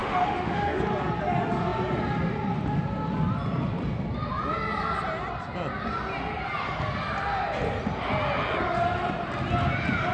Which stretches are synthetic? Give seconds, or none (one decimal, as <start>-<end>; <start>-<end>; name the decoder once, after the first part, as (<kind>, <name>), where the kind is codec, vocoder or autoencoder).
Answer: 0.0-0.8 (autoencoder, DAC-VAE)